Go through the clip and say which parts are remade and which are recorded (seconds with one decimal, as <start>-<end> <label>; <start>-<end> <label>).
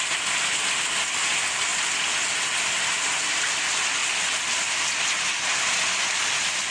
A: 0.0-6.7 recorded